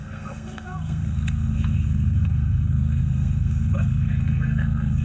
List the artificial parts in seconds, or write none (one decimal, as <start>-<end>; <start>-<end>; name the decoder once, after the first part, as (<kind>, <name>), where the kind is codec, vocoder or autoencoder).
0.0-5.0 (codec, SNAC)